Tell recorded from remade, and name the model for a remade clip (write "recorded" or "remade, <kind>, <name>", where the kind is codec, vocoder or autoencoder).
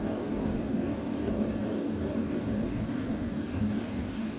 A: remade, codec, DAC